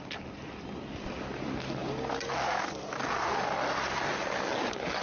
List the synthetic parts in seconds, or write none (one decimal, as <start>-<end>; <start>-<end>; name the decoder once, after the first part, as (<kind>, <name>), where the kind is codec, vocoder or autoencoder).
none